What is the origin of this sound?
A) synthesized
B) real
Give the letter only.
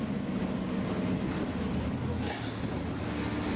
B